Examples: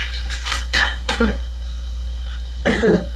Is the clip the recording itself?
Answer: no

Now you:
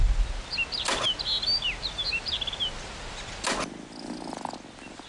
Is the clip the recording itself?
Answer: yes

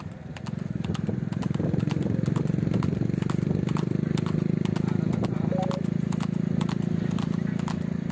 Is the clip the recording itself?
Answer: yes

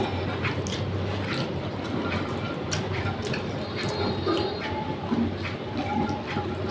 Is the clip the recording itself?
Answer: yes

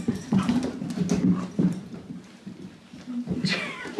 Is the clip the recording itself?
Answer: yes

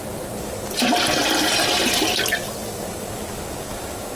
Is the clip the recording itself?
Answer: yes